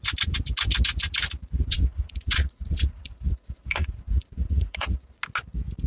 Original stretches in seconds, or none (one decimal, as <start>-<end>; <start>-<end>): 0.0-1.7; 5.2-5.9